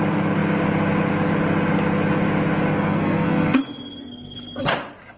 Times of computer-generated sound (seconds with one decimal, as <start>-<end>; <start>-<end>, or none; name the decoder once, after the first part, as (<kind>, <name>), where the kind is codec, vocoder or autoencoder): 2.7-3.6 (codec, SNAC); 4.0-4.6

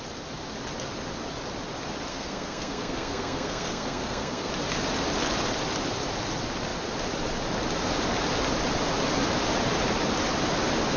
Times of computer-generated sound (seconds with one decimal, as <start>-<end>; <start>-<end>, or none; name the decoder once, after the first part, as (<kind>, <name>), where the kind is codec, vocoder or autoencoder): 2.1-4.5 (codec, SNAC)